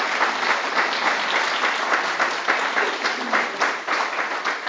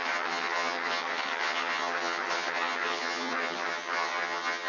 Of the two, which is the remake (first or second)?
second